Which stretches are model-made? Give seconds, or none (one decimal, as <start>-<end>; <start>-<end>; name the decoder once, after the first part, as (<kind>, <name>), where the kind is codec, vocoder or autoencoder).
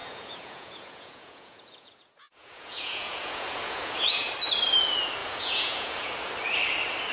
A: 0.0-4.3 (vocoder, Vocos); 5.2-6.1